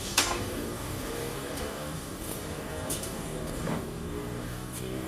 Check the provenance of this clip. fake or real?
fake